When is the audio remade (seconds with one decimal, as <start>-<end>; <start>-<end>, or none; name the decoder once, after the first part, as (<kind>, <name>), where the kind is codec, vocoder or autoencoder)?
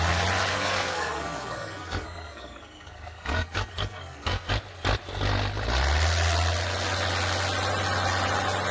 0.5-4.5 (codec, SNAC)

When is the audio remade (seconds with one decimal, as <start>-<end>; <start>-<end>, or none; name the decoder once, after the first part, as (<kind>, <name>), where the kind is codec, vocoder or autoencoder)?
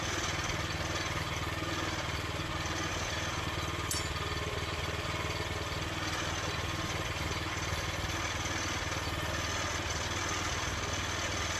none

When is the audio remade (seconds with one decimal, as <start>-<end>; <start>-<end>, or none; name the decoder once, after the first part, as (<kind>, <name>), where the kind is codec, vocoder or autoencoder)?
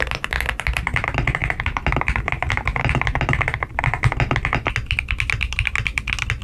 1.4-2.3 (vocoder, BigVGAN v2); 2.8-3.8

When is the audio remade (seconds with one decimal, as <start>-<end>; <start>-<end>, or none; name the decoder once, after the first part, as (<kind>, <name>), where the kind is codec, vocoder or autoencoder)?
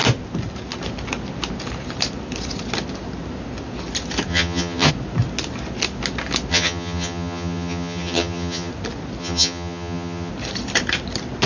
4.3-4.9 (vocoder, HiFi-GAN); 6.5-8.7; 9.2-10.3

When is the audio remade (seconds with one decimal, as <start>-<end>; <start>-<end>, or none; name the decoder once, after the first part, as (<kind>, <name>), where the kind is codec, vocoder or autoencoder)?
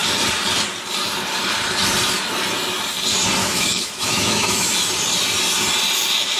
3.4-4.7 (autoencoder, DAC-VAE)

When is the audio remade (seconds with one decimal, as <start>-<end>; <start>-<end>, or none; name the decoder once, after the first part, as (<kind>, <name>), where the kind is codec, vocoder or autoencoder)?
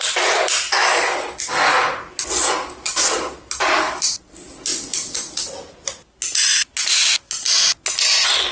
0.8-1.4 (vocoder, BigVGAN v2)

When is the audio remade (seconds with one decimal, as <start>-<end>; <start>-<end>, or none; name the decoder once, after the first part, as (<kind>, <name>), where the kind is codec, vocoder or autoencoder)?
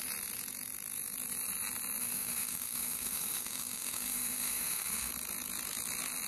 2.0-5.1 (autoencoder, DAC-VAE)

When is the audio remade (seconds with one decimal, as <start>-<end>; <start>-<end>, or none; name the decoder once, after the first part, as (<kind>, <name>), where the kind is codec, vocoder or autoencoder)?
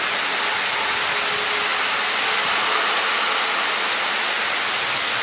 none